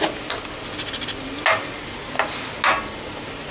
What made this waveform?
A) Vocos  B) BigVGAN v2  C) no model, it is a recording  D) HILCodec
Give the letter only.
C